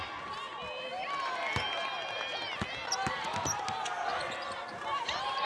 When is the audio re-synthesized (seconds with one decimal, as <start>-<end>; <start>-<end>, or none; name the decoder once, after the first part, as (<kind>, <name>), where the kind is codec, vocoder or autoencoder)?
none